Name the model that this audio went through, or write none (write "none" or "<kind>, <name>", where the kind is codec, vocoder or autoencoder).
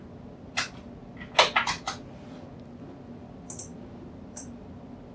none